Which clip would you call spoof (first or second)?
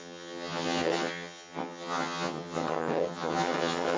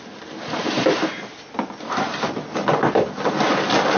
first